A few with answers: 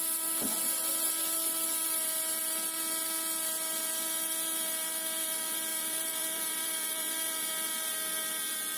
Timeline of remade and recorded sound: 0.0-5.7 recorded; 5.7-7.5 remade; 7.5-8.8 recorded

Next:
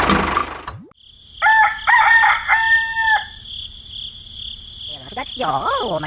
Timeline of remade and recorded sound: 0.0-6.1 recorded

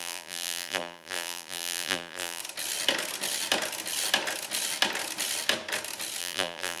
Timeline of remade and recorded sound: 0.0-2.4 remade; 2.4-6.2 recorded; 6.2-6.8 remade